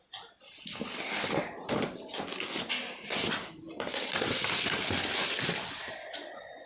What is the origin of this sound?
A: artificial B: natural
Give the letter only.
B